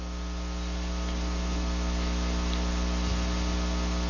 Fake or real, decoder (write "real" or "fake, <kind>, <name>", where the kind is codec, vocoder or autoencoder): real